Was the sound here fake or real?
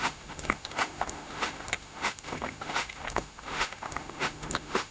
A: fake